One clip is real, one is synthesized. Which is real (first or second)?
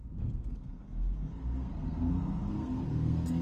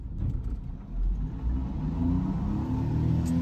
second